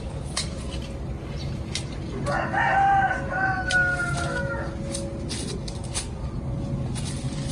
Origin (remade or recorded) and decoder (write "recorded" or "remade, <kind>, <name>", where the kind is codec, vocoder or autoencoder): recorded